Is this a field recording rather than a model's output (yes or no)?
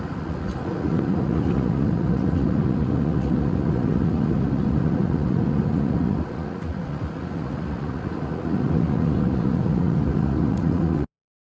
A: no